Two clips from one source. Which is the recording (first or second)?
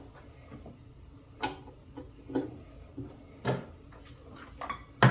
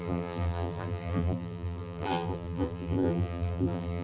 first